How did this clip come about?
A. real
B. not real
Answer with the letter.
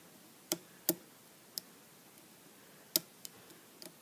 A